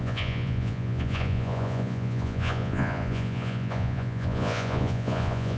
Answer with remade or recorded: remade